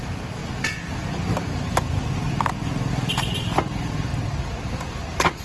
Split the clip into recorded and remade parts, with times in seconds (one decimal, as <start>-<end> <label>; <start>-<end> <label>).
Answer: 0.0-0.4 remade; 0.4-2.9 recorded; 2.9-4.1 remade; 4.1-4.7 recorded; 4.7-5.4 remade